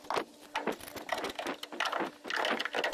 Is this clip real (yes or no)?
yes